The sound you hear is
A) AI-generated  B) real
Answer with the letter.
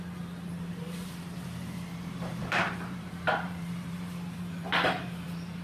A